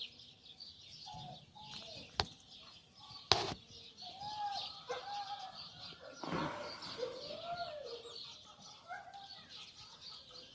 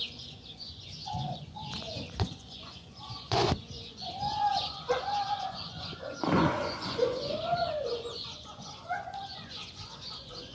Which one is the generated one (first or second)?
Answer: second